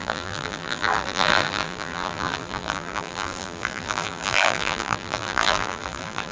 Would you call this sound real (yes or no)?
no